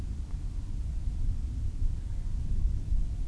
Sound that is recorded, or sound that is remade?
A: recorded